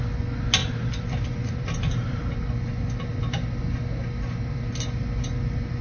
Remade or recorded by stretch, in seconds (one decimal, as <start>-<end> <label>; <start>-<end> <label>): 0.0-0.6 recorded; 0.6-2.2 remade; 2.2-5.8 recorded